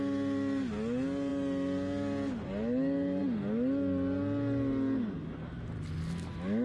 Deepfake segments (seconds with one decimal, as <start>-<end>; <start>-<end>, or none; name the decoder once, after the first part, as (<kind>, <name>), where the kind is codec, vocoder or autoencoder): none